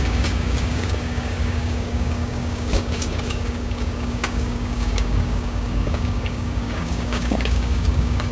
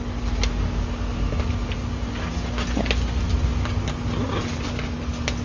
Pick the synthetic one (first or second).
first